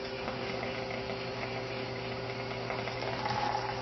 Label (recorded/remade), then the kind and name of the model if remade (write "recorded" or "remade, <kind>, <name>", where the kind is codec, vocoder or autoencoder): recorded